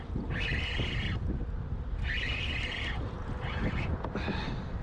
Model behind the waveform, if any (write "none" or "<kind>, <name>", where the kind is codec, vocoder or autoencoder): none